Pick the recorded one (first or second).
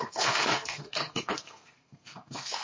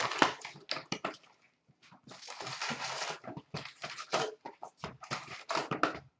second